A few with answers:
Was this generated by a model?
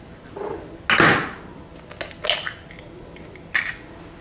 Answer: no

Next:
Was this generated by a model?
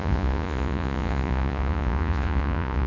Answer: yes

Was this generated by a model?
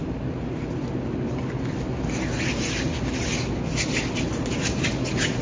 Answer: no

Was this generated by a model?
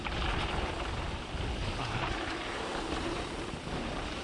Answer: no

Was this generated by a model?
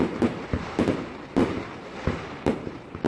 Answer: yes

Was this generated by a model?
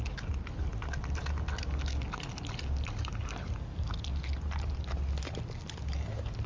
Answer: no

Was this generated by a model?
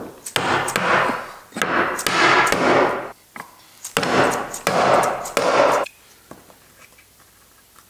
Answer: no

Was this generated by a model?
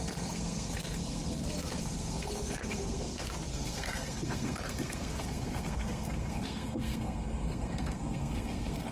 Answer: yes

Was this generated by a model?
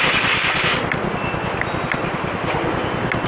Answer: no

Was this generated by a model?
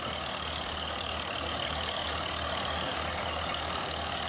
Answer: yes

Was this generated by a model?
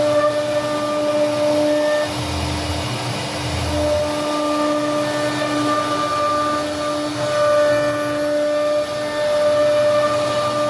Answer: no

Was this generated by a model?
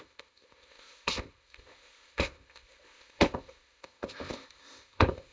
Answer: yes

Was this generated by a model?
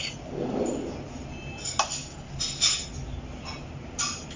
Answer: no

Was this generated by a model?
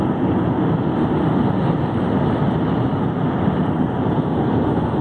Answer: no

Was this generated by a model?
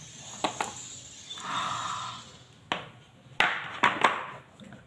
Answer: no